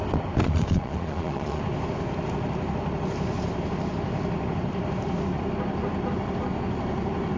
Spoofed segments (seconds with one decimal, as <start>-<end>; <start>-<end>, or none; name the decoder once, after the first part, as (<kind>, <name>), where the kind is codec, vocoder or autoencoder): 0.4-1.6 (vocoder, Vocos)

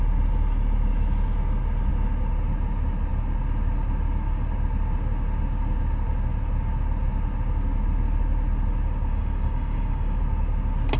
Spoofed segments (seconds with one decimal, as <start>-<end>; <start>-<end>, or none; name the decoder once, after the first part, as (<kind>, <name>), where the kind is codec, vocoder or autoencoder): 9.1-10.2 (codec, DAC)

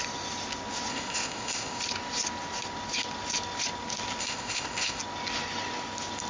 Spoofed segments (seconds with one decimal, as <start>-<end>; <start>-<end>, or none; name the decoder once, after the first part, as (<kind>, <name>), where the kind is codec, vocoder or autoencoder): 0.9-1.8 (codec, ZipCodec); 4.2-5.0

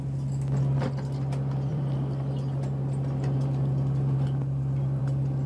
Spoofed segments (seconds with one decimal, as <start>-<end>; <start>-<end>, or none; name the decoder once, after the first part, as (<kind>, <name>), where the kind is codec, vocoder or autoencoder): 1.7-5.0 (vocoder, BigVGAN v2)

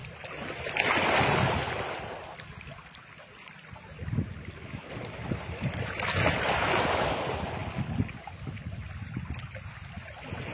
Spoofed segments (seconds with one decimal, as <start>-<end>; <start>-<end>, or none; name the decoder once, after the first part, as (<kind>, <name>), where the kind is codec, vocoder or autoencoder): none

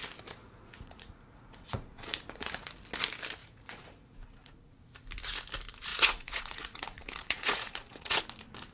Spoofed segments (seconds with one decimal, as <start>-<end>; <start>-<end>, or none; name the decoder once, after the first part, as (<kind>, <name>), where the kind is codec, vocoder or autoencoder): 0.4-2.7 (vocoder, Vocos); 3.4-4.8; 5.9-8.2

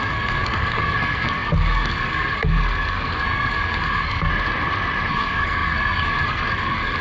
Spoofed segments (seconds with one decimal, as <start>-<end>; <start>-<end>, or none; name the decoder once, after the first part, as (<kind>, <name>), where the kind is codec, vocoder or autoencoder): 0.0-4.3 (codec, SNAC); 5.1-7.0

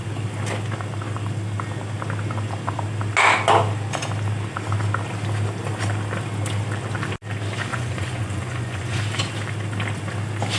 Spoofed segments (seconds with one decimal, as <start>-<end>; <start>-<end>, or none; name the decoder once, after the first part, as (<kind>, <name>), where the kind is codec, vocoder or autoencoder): 7.7-9.0 (vocoder, Vocos)